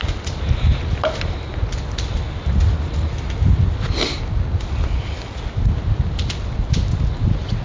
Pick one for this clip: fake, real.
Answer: real